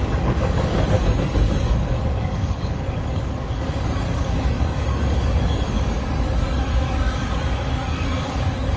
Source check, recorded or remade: remade